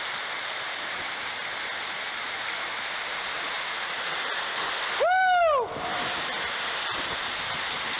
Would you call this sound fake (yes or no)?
no